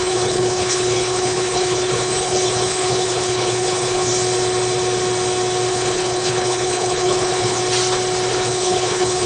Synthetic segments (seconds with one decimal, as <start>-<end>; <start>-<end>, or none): 0.0-4.1; 5.7-7.6; 8.3-9.3